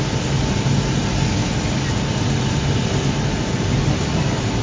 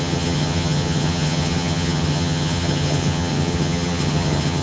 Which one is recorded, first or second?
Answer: first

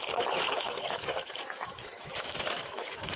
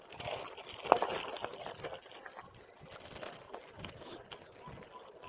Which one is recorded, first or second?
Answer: second